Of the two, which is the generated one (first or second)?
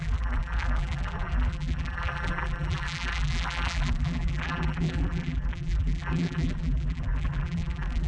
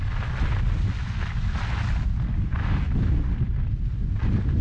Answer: first